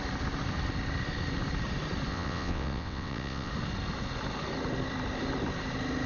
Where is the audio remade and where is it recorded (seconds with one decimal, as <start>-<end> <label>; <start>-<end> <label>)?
0.0-2.1 recorded; 2.1-3.5 remade; 3.5-6.1 recorded